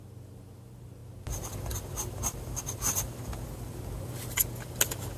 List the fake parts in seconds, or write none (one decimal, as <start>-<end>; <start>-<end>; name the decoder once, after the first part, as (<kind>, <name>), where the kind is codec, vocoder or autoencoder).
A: none